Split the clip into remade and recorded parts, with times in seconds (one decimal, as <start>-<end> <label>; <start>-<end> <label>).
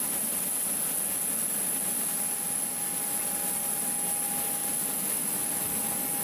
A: 0.0-6.2 recorded